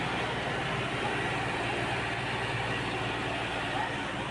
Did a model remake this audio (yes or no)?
no